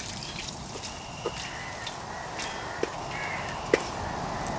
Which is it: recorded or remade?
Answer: recorded